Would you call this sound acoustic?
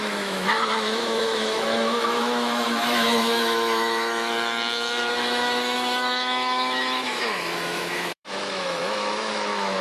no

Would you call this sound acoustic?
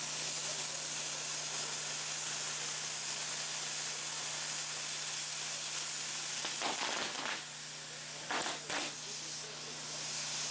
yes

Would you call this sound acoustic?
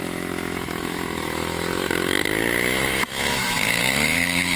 no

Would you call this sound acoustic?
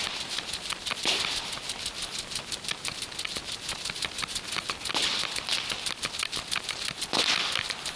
yes